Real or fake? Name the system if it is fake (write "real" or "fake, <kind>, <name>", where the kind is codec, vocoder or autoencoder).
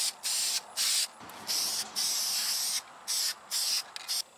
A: real